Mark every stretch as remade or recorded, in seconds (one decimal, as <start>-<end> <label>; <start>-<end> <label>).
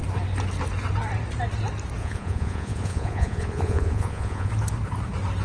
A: 0.0-2.0 recorded; 2.0-4.5 remade; 4.5-5.4 recorded